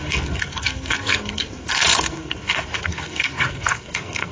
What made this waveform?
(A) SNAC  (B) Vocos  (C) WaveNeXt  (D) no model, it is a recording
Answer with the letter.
A